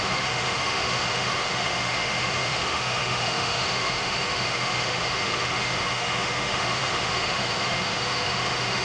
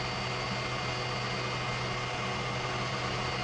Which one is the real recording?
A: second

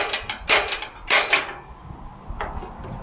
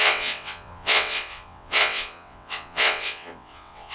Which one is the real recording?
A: first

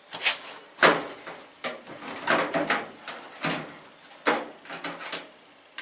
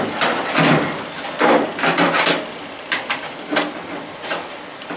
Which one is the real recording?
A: first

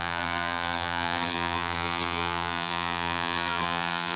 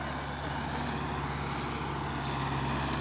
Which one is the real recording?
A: second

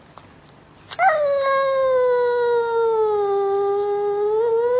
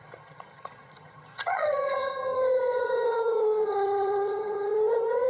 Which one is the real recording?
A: first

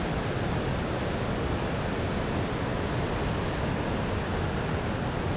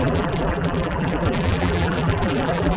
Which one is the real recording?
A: first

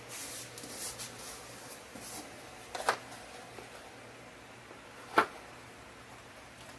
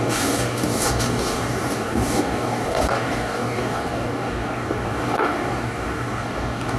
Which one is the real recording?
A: first